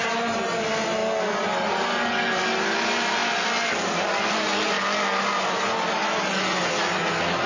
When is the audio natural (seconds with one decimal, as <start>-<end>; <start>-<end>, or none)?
0.0-7.5